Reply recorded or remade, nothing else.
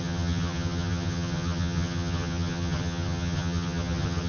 remade